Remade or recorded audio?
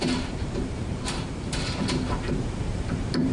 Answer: remade